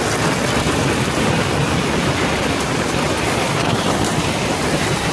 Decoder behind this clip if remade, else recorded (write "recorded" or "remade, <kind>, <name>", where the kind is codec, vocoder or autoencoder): recorded